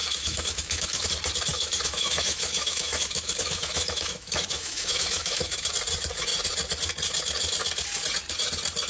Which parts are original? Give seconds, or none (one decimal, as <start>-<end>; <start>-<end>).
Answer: 1.1-1.5; 5.7-8.9